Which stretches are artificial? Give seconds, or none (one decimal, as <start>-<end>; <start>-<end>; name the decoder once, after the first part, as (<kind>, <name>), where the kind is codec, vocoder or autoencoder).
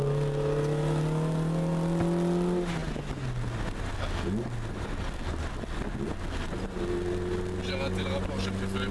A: none